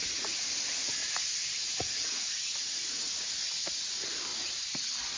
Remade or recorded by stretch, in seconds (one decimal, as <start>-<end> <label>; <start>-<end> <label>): 0.0-4.3 remade; 4.3-5.2 recorded